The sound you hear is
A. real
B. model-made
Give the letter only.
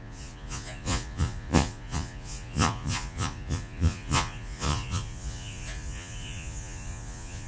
B